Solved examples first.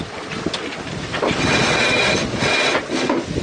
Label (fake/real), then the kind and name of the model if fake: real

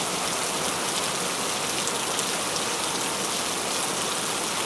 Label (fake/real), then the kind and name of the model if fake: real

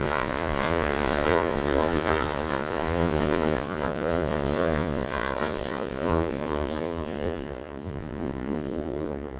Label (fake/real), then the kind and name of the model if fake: fake, vocoder, Vocos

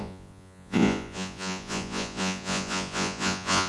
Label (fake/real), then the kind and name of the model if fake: fake, vocoder, Vocos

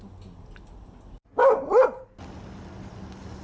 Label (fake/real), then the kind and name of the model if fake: real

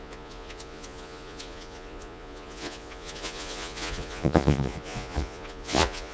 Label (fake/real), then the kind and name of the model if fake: fake, vocoder, Vocos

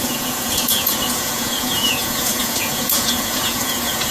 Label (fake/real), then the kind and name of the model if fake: fake, vocoder, Vocos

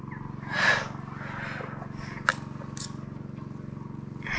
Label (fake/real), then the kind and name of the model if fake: real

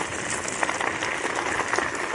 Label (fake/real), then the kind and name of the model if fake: real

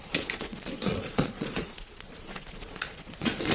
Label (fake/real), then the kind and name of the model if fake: fake, vocoder, Vocos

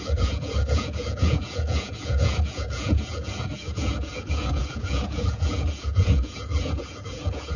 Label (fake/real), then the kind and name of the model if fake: fake, vocoder, Vocos